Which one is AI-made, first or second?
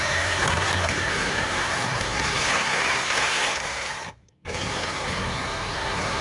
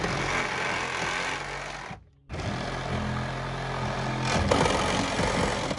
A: first